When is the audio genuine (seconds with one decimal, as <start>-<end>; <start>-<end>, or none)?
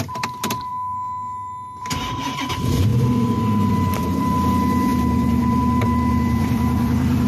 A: 0.7-2.0; 2.9-3.7